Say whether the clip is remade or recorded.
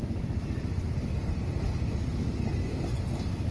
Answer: recorded